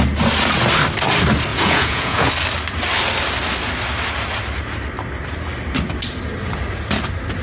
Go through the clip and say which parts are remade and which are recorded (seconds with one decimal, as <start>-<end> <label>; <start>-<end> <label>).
0.0-1.5 recorded; 1.5-2.3 remade; 2.3-7.4 recorded